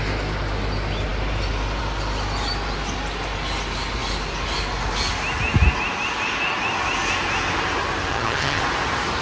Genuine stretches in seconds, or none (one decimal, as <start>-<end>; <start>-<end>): 0.0-8.1; 8.6-9.2

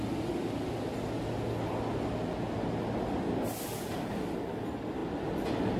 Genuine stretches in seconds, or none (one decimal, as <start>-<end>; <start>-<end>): 0.0-5.8

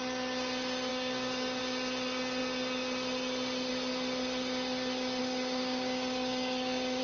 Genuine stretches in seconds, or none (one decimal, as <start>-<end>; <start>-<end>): 0.0-0.9; 1.6-5.2

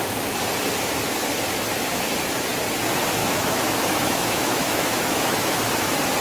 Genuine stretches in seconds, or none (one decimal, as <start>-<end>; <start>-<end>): 0.0-3.2; 5.7-6.2